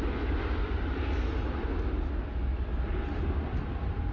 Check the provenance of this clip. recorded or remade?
recorded